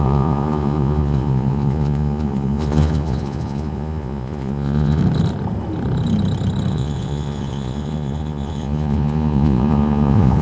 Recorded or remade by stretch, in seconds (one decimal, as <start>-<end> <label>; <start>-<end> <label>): 0.0-5.0 remade; 5.0-6.7 recorded; 6.7-10.4 remade